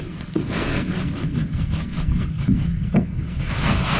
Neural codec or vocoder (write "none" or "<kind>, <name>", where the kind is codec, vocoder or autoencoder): codec, SNAC